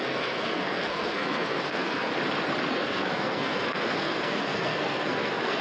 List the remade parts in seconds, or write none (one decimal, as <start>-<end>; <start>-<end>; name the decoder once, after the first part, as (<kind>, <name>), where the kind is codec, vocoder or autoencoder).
0.0-2.1 (codec, SNAC); 2.7-5.6